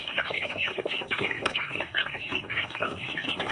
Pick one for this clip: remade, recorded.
remade